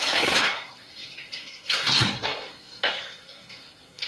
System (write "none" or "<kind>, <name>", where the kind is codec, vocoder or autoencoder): codec, SNAC